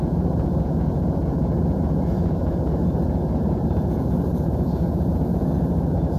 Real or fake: fake